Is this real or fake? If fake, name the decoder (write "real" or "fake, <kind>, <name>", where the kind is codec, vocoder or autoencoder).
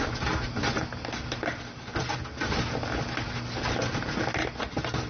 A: real